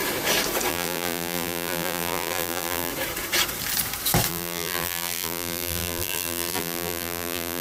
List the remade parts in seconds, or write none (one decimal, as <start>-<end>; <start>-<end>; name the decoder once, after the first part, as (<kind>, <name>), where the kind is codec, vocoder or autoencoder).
0.7-2.9 (vocoder, BigVGAN v2); 4.3-7.6